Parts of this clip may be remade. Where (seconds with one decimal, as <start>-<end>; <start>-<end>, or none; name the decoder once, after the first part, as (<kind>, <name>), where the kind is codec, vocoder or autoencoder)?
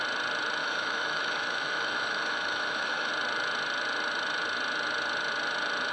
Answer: 0.6-3.1 (autoencoder, DAC-VAE)